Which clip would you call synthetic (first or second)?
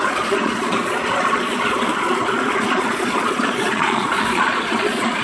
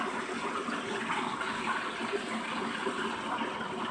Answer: first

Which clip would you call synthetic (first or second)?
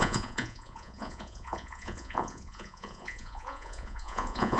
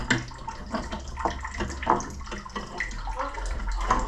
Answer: first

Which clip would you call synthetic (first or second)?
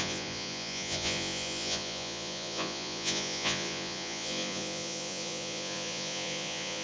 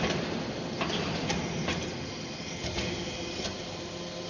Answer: first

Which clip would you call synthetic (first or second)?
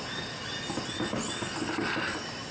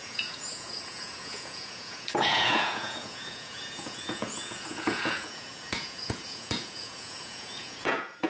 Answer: second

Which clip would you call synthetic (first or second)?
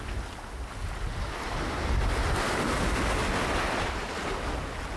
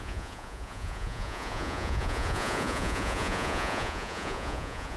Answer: second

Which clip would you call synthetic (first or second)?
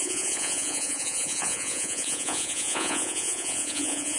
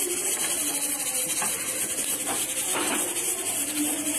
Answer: first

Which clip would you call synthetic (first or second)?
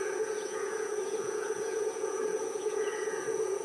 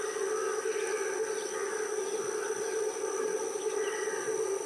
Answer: first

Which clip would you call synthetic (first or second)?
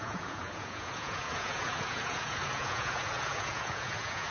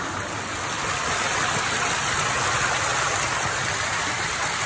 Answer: first